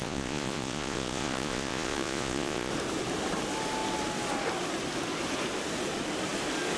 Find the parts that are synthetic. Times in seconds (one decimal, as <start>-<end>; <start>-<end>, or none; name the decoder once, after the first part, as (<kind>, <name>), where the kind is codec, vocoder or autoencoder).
0.0-2.7 (vocoder, Vocos)